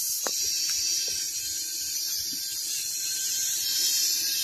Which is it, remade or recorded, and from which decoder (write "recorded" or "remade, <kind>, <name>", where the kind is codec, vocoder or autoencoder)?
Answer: recorded